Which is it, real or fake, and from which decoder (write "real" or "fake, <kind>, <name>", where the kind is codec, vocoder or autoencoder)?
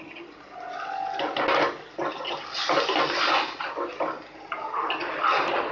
real